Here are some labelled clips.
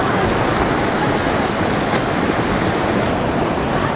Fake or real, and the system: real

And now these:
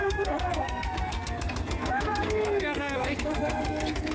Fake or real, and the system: fake, codec, SNAC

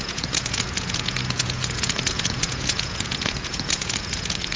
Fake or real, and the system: fake, vocoder, Vocos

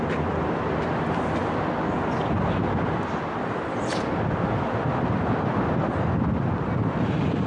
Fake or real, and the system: real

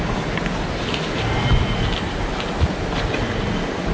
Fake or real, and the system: real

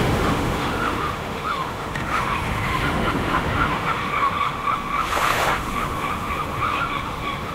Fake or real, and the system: fake, autoencoder, DAC-VAE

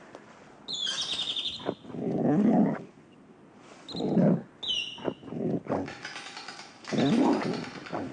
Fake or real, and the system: real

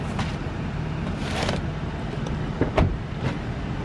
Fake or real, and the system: real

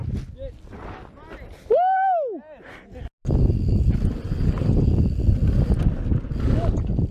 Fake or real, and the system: real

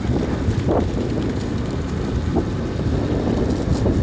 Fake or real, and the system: real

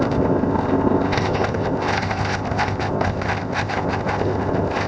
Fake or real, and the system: fake, codec, ZipCodec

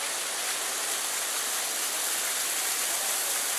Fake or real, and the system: real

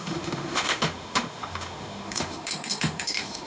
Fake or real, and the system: fake, autoencoder, DAC-VAE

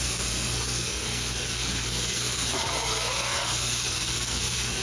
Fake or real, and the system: fake, codec, SNAC